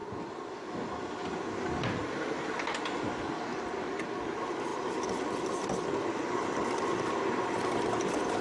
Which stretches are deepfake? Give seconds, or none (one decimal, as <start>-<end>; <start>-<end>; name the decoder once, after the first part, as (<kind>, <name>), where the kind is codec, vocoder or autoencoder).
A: none